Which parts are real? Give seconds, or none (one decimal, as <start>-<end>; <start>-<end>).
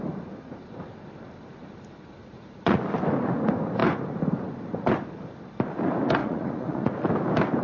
0.0-2.2; 2.8-6.2; 6.9-7.6